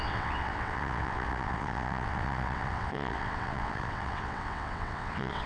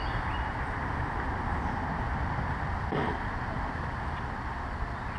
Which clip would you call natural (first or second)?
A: second